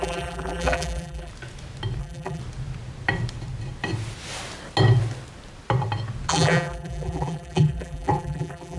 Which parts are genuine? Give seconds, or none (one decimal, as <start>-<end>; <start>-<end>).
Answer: 1.3-2.0; 2.4-6.3